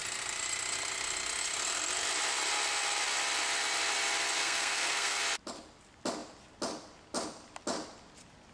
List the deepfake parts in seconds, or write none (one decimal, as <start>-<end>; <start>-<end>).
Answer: 4.4-5.2